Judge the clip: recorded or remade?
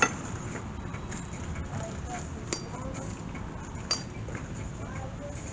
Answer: recorded